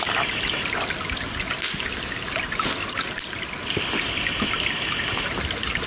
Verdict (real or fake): real